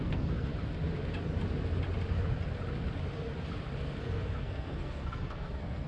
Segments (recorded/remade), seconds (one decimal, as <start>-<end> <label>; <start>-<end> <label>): 0.0-0.5 remade; 0.5-4.0 recorded; 4.0-5.9 remade